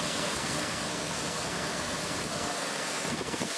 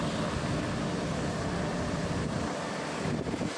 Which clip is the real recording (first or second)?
second